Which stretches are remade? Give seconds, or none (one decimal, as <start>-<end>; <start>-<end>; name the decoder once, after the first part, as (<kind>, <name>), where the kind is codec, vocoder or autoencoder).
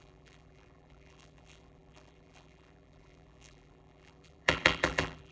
0.0-5.3 (vocoder, BigVGAN v2)